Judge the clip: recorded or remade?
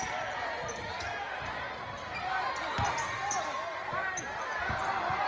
recorded